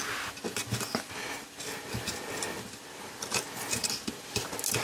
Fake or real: real